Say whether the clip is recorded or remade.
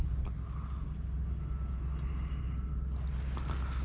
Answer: recorded